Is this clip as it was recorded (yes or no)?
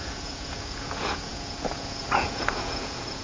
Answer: no